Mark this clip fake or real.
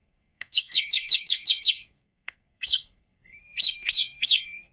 fake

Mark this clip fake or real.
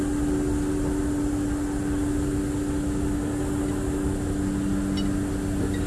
real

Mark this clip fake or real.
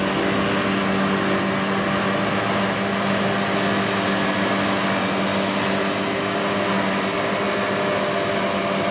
real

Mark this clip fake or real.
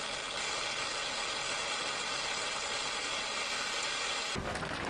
real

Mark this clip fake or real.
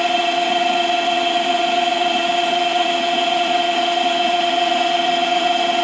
fake